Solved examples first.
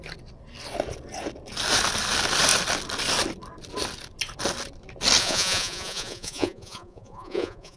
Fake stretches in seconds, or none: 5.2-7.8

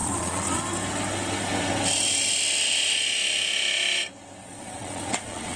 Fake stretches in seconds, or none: 0.0-0.6; 4.4-5.6

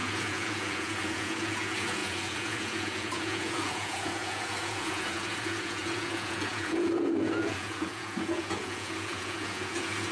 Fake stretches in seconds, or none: 0.0-10.1

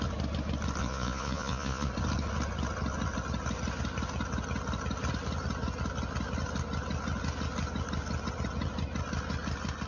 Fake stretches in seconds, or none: 0.8-1.9